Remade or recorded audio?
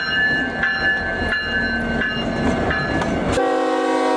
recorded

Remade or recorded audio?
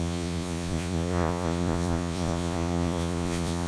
remade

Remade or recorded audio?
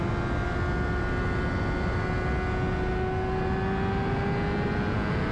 recorded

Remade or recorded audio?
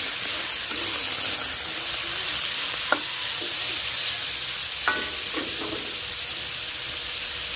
recorded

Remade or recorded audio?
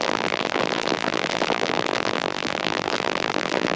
remade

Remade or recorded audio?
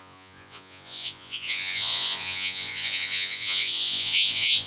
remade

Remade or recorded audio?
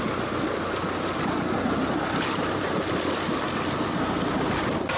recorded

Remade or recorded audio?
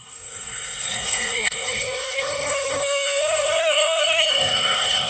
remade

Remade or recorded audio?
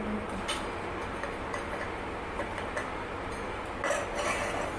recorded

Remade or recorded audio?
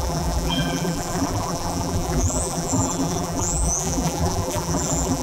remade